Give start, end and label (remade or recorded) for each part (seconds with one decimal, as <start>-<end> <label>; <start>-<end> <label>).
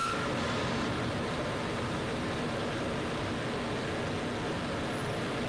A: 0.0-3.3 remade; 3.3-5.5 recorded